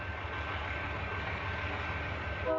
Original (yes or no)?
yes